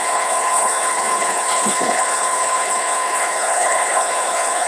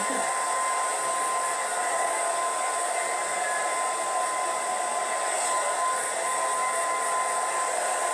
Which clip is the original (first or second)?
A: second